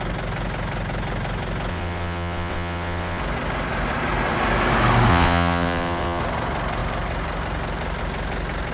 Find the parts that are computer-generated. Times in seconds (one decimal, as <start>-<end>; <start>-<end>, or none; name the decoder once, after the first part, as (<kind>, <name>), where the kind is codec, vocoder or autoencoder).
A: 1.7-3.2 (vocoder, WaveNeXt); 5.1-6.2